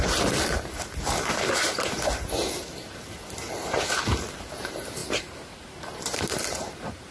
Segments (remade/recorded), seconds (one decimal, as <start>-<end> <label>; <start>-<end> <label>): 0.0-5.0 recorded; 5.0-7.1 remade